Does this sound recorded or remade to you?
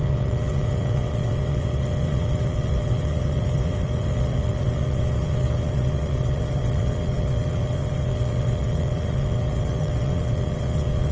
remade